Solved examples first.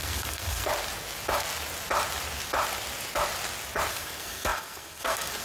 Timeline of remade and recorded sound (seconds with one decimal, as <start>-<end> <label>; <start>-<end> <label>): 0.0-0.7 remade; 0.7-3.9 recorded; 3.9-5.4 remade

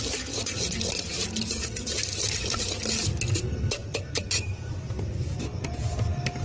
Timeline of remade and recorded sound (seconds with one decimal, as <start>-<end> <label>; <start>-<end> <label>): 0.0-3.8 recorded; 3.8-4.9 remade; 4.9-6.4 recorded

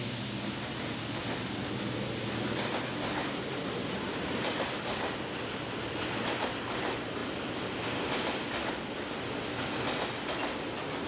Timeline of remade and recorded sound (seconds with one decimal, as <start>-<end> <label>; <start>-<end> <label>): 0.0-11.1 recorded

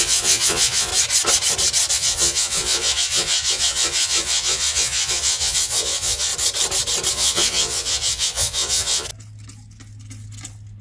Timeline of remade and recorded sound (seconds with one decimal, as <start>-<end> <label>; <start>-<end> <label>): 0.0-0.9 remade; 0.9-1.9 recorded; 1.9-6.3 remade; 6.3-7.1 recorded; 7.1-9.1 remade; 9.1-10.8 recorded

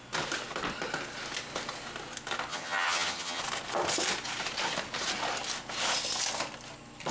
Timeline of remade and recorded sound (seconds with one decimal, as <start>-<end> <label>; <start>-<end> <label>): 0.0-2.5 recorded; 2.5-3.4 remade; 3.4-7.1 recorded

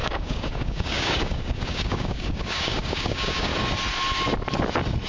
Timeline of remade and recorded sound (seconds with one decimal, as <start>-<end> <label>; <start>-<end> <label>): 0.0-3.5 remade; 3.5-5.1 recorded